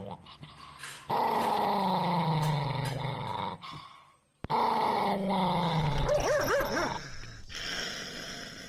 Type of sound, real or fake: real